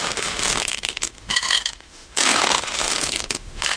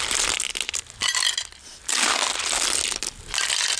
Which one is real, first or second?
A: second